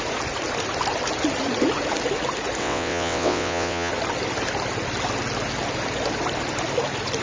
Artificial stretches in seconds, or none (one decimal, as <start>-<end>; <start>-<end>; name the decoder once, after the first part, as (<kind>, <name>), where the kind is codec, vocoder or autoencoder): 2.6-3.9 (vocoder, WaveNeXt)